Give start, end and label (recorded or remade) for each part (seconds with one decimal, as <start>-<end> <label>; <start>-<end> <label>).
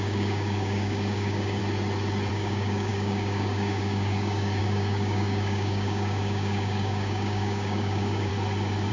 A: 0.0-1.6 remade; 1.6-2.3 recorded; 2.3-8.3 remade; 8.3-8.9 recorded